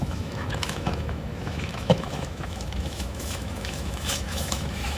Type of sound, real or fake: fake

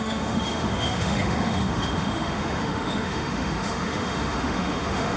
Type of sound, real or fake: fake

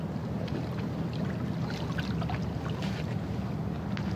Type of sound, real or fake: real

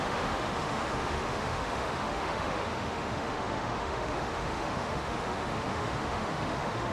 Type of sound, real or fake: fake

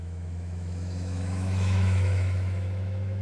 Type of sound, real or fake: fake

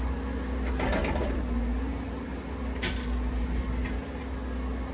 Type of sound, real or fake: real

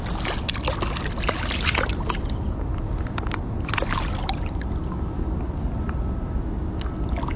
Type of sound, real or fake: real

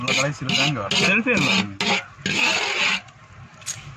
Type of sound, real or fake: real